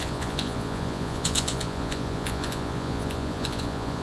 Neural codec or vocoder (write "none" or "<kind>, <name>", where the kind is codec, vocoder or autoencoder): vocoder, Vocos